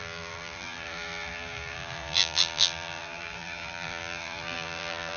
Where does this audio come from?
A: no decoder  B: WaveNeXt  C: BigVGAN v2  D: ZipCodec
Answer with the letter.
C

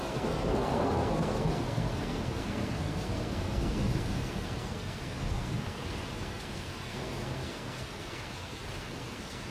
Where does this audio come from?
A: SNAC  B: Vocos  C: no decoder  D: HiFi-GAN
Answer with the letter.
A